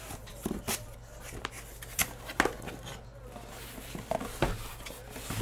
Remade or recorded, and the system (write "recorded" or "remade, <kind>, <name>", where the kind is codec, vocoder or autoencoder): recorded